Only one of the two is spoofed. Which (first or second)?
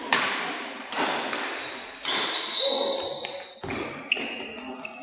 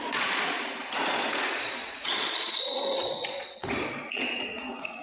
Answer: second